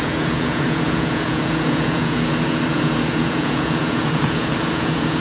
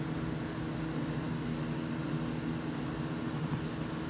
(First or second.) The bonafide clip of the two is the second